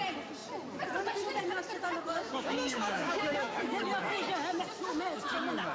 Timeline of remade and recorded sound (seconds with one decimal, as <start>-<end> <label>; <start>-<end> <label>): 0.0-2.2 recorded; 2.2-3.8 remade; 3.8-5.7 recorded